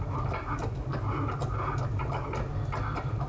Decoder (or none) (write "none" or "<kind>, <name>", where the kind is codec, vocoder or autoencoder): none